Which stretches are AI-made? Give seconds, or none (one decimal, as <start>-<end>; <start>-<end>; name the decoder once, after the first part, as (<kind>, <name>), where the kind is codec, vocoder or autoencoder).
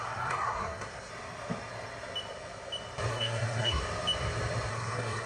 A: 0.0-1.1 (codec, SNAC); 3.1-3.8; 4.7-5.3